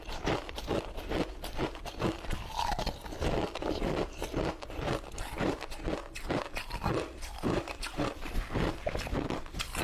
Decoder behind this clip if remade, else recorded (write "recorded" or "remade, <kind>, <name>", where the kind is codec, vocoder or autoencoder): remade, vocoder, BigVGAN v2